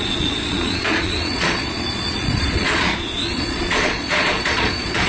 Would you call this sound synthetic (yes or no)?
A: yes